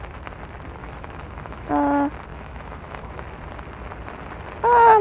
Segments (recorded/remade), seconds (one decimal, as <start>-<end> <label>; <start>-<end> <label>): 0.0-0.8 recorded; 0.8-1.7 remade; 1.7-2.3 recorded; 2.3-3.2 remade; 3.2-5.0 recorded